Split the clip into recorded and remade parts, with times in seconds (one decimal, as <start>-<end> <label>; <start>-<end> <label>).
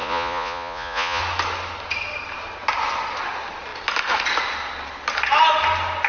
0.0-1.2 remade; 1.2-6.1 recorded